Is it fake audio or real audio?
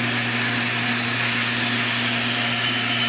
real